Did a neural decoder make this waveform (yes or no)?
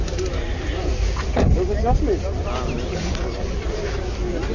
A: no